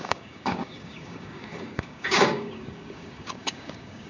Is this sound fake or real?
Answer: fake